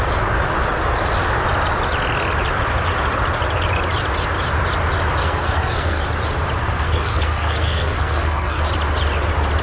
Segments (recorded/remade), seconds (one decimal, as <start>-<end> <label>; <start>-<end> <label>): 0.0-5.2 recorded; 5.2-6.0 remade; 6.0-6.6 recorded; 6.6-8.6 remade; 8.6-9.6 recorded